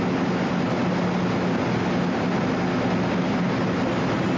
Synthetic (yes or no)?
no